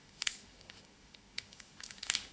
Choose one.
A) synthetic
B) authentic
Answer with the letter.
A